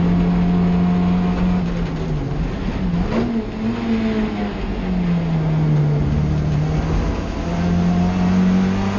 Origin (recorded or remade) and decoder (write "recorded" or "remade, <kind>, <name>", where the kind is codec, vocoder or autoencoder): recorded